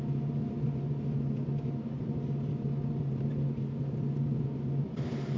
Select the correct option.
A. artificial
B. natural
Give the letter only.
B